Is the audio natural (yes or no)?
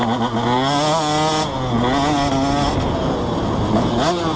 yes